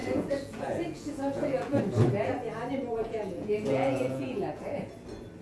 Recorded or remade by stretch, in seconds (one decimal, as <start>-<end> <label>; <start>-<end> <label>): 0.0-1.8 remade; 1.8-3.0 recorded; 3.0-4.9 remade; 4.9-5.4 recorded

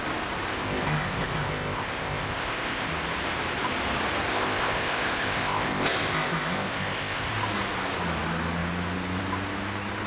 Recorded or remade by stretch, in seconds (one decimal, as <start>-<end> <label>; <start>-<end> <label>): 0.0-0.5 recorded; 0.5-2.9 remade; 2.9-4.3 recorded; 4.3-7.3 remade; 7.3-10.1 recorded